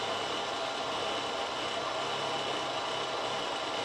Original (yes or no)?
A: yes